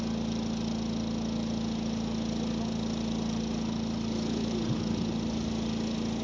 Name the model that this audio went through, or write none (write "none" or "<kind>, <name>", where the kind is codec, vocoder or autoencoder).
none